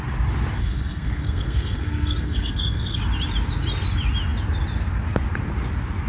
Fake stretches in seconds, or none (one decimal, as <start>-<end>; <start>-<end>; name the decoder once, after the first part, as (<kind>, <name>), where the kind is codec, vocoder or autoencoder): 0.6-3.0 (codec, SNAC)